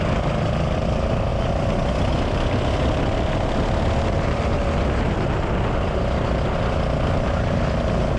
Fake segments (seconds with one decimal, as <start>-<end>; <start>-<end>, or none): none